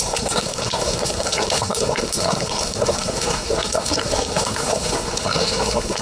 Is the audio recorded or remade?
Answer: remade